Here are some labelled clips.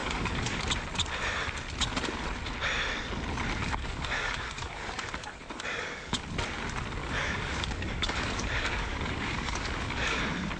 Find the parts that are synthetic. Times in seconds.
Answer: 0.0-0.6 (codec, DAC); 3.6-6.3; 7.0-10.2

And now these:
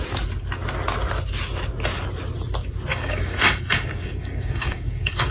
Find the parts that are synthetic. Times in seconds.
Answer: 2.9-5.3 (codec, DAC)

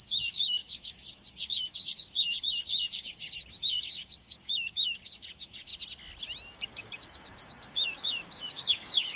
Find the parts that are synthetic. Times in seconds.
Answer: 0.0-5.7 (codec, DAC); 6.5-9.2

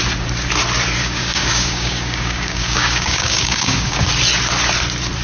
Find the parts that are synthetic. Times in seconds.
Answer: 1.0-4.1 (codec, DAC)

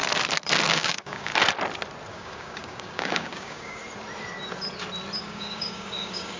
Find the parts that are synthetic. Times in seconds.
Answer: 0.7-1.3 (codec, DAC); 2.1-3.8; 5.2-6.4

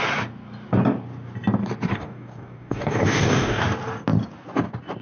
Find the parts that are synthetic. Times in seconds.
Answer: 1.9-3.6 (codec, DAC)

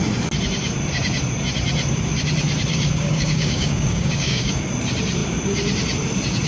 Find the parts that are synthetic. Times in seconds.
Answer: 2.7-4.6 (codec, DAC)

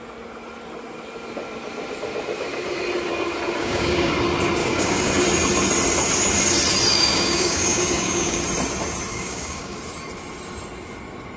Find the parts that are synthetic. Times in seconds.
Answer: 3.6-4.1 (codec, DAC); 4.6-5.1; 6.9-8.4; 9.1-9.8